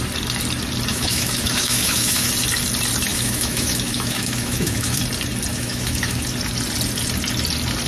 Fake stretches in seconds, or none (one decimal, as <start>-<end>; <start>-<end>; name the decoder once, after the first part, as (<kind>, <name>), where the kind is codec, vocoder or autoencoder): 0.9-2.3 (autoencoder, DAC-VAE); 3.1-5.0; 5.5-6.2